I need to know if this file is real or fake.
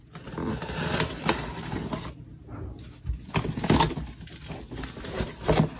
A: real